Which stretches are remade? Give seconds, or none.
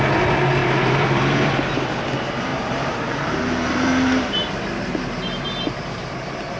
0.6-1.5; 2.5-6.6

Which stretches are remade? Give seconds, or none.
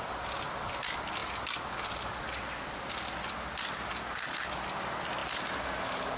none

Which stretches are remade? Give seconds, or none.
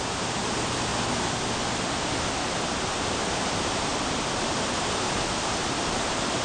0.0-0.9; 3.0-3.9; 5.4-6.4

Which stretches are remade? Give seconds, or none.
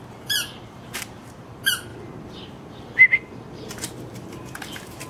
0.0-5.1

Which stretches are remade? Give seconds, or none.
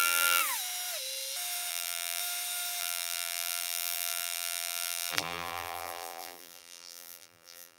0.0-0.4; 1.7-2.2; 2.8-7.8